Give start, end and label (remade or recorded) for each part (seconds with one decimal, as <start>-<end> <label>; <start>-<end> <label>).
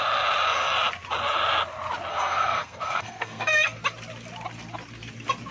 0.0-2.1 recorded; 2.1-3.8 remade; 3.8-5.5 recorded